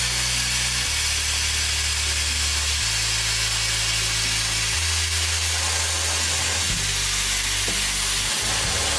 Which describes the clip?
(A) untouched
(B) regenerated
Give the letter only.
A